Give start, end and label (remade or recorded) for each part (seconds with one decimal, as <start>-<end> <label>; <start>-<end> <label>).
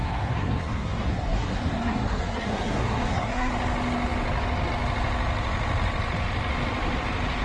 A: 0.0-3.5 remade; 3.5-7.4 recorded